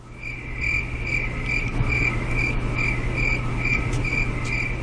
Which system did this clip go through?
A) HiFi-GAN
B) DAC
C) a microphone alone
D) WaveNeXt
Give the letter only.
C